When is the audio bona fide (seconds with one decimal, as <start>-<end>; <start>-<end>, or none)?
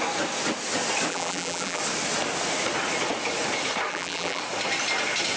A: 0.0-1.1; 1.8-3.9; 4.4-5.4